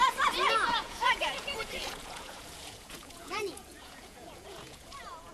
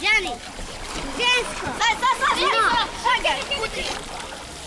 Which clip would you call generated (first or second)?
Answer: first